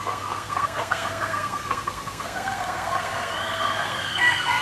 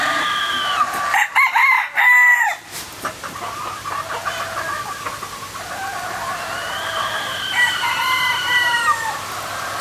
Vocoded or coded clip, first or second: first